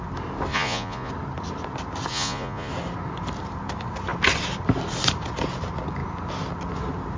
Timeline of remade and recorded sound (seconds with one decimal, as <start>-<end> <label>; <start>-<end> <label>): 0.0-0.5 recorded; 0.5-1.1 remade; 1.1-2.1 recorded; 2.1-2.7 remade; 2.7-7.2 recorded